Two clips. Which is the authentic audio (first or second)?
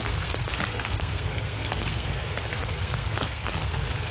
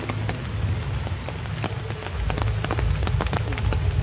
second